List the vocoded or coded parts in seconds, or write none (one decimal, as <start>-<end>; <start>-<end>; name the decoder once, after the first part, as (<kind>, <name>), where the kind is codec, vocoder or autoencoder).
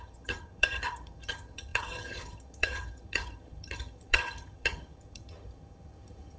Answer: 0.0-6.4 (vocoder, HiFi-GAN)